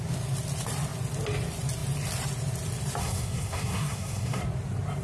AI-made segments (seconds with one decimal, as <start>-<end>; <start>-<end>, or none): 3.0-4.4